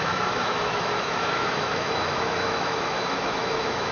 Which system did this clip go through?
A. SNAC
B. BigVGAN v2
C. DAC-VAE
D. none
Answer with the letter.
C